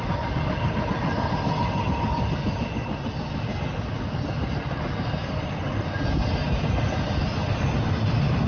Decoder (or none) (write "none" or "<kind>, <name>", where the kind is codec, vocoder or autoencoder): none